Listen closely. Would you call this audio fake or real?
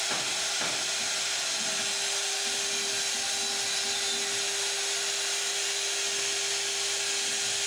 real